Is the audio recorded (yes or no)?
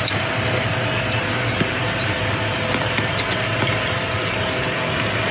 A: yes